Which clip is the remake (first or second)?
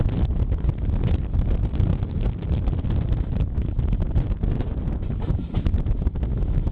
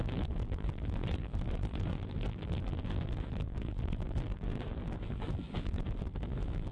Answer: second